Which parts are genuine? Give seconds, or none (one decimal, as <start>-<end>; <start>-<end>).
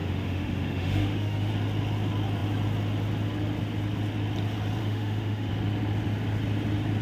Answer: 1.5-4.8; 5.5-7.0